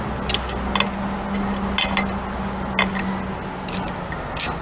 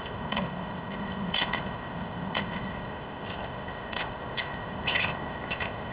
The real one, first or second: first